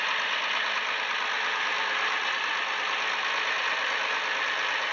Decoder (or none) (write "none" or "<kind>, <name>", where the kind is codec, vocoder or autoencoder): none